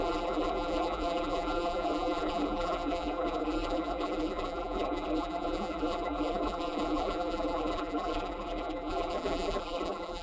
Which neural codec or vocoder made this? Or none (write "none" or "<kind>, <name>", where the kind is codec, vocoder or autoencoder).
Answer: vocoder, BigVGAN v2